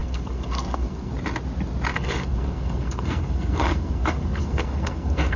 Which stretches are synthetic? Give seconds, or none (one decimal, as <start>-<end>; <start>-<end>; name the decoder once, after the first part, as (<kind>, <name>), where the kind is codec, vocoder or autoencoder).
0.0-1.1 (codec, SNAC); 1.9-5.4